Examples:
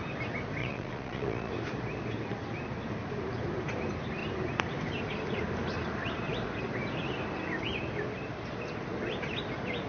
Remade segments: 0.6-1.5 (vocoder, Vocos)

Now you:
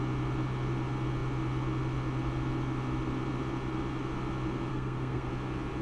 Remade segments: 4.7-5.3 (codec, SNAC)

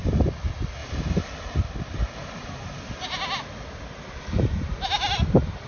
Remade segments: none

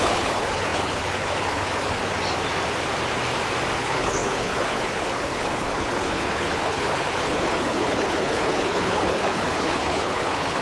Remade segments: 0.0-2.0 (codec, HILCodec); 3.8-10.6

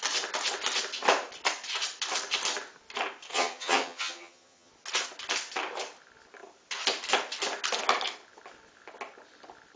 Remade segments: 3.3-4.7 (vocoder, HiFi-GAN)